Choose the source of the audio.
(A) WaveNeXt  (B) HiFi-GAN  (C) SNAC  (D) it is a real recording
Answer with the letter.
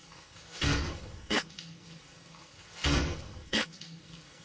C